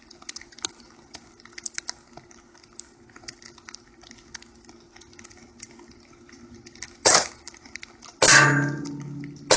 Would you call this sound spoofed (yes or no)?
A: no